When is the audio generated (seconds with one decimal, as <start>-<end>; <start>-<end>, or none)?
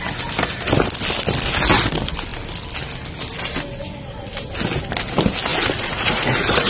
5.5-6.7